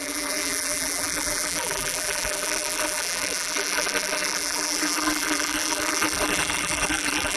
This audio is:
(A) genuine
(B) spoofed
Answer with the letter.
B